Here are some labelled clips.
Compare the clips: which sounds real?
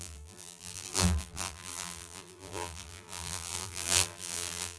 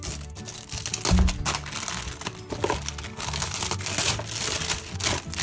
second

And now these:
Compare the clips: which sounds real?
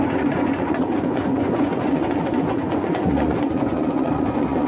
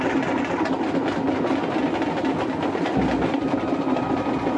second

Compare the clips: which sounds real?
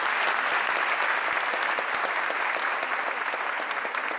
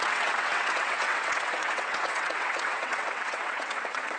first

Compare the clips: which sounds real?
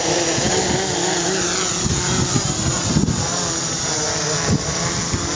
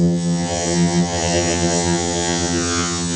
first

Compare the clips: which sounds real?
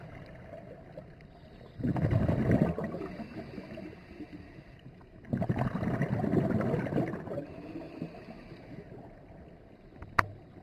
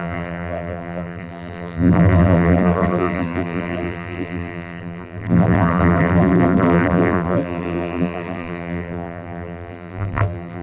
first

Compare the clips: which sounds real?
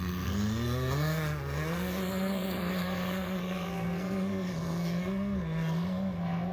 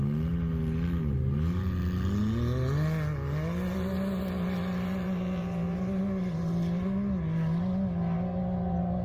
second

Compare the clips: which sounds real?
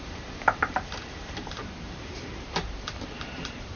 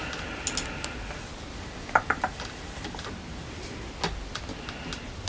second